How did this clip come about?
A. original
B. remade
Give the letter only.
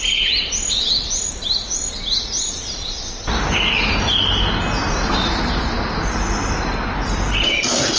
A